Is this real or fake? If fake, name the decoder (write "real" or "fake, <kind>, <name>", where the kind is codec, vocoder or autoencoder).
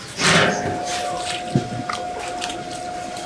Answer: real